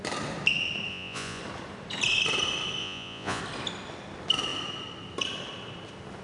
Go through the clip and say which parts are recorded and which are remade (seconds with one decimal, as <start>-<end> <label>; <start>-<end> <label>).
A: 0.0-0.9 recorded; 0.9-1.4 remade; 1.4-2.8 recorded; 2.8-3.4 remade; 3.4-6.2 recorded